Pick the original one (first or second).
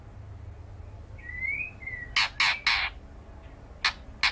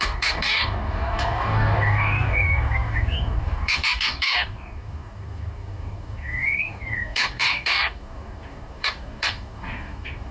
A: first